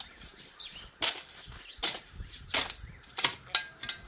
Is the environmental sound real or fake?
real